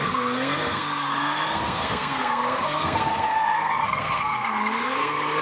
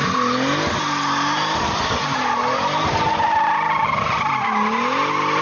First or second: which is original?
second